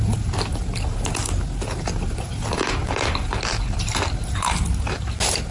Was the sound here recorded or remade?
recorded